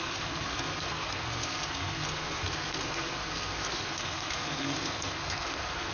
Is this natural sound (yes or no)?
no